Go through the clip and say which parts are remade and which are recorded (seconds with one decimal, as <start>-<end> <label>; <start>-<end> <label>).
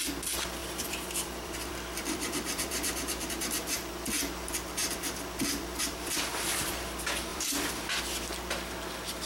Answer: 0.0-0.6 recorded; 0.6-3.9 remade; 3.9-4.8 recorded; 4.8-6.3 remade; 6.3-7.3 recorded; 7.3-8.0 remade; 8.0-9.3 recorded